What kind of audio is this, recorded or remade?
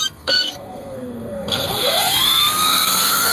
remade